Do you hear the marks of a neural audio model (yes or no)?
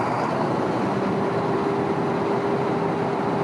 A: no